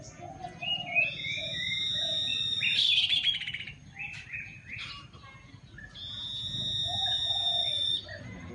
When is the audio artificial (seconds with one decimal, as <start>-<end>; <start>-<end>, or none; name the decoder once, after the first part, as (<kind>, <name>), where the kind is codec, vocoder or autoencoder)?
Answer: 2.3-5.0 (vocoder, BigVGAN v2); 7.6-8.5